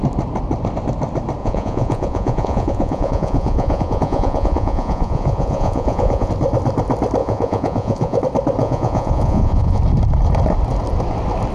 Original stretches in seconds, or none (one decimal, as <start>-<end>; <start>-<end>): 0.0-1.4; 6.3-7.2; 8.2-8.6; 9.8-11.5

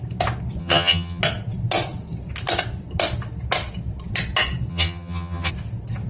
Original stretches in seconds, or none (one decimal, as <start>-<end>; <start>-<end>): 0.0-0.6; 1.2-4.7; 5.5-6.1

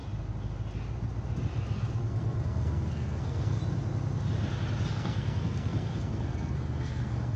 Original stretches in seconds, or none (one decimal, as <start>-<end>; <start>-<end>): 0.0-2.0; 3.6-4.9

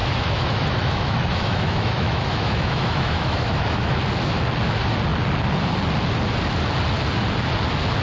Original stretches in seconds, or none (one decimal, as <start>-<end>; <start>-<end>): 4.0-8.0

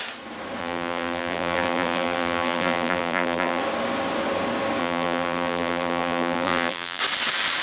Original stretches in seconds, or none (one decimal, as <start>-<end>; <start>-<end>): 0.0-0.6; 3.6-4.8; 7.0-7.6

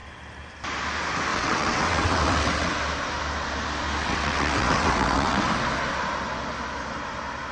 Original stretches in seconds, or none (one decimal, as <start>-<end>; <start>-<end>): 0.0-1.3; 2.7-4.0; 5.5-7.5

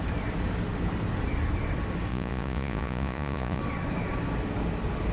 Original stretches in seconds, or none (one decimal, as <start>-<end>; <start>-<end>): 0.0-2.1; 3.6-5.1

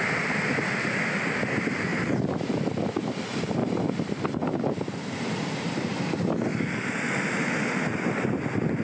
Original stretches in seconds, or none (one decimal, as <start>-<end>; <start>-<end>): 0.0-1.9; 2.6-3.6; 6.0-8.8